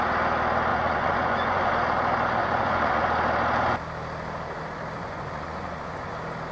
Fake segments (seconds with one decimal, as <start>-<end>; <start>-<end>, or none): 0.7-1.7; 2.4-3.0; 5.0-6.1